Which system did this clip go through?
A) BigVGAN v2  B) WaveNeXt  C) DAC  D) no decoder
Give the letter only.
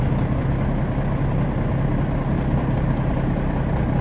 D